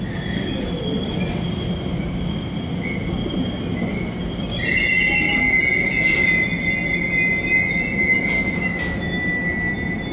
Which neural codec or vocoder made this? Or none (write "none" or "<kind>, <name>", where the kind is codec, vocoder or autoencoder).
none